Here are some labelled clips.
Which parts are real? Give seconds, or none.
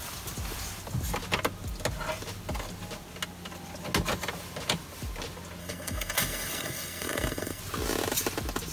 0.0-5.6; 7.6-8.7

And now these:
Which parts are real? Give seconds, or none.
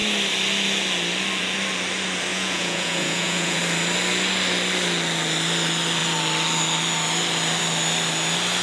0.0-2.3; 3.6-8.6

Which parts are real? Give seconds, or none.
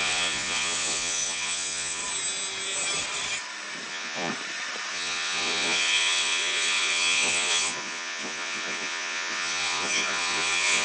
2.0-3.9; 4.3-4.9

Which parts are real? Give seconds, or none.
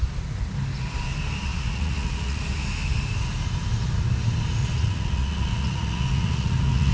0.0-1.5; 2.4-4.6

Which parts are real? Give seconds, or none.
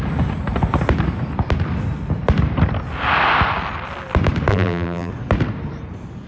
0.0-4.5; 5.1-6.3